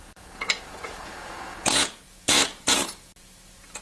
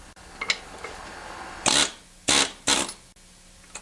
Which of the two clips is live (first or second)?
second